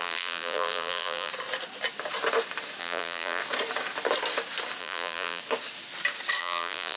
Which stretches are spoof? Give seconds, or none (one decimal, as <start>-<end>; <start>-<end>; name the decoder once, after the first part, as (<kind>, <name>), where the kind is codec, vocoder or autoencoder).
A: 0.0-1.3 (vocoder, BigVGAN v2); 2.8-3.4; 4.8-5.4; 6.4-7.0